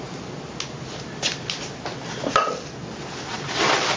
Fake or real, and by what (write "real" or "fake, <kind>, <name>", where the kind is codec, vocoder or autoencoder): real